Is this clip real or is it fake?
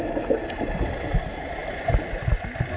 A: real